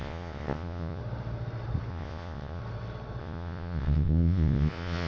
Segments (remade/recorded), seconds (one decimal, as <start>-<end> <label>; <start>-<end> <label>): 0.0-1.0 remade; 1.0-1.9 recorded; 1.9-2.6 remade; 2.6-3.2 recorded; 3.2-5.1 remade